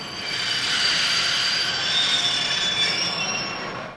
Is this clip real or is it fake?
real